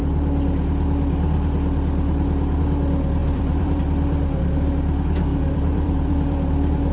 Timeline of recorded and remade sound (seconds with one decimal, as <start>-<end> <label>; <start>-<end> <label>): 0.0-3.2 recorded; 3.2-3.8 remade; 3.8-5.3 recorded; 5.3-6.9 remade